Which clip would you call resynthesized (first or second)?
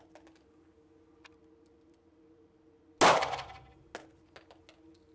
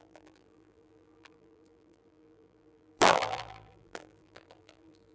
second